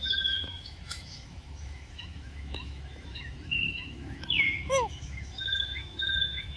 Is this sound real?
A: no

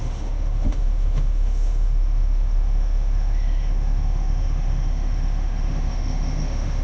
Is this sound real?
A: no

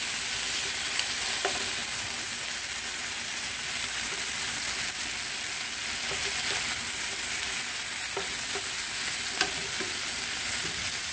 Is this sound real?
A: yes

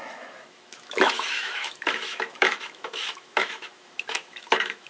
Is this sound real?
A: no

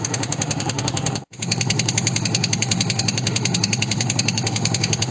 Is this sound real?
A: no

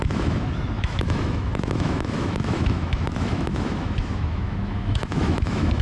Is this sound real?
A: no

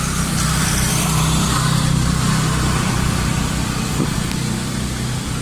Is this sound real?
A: yes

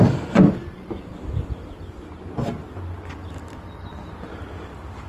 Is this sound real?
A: yes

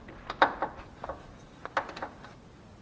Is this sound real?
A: yes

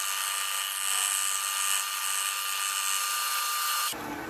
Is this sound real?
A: yes